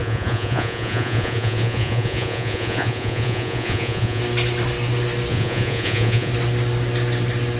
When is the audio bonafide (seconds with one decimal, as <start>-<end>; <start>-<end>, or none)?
4.2-5.3; 6.3-7.6